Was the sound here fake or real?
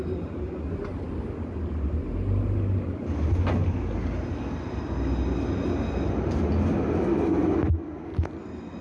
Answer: real